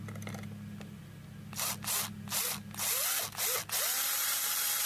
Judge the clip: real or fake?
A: real